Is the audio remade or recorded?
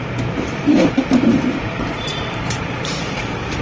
remade